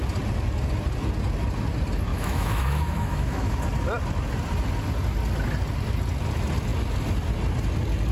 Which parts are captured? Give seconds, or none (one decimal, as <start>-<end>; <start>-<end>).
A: 0.0-2.1; 3.6-8.1